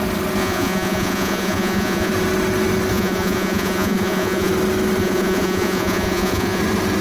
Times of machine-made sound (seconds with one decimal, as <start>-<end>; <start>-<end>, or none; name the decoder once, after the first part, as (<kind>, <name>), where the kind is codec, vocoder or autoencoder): 0.4-2.1 (vocoder, Vocos); 2.9-4.5; 5.0-6.6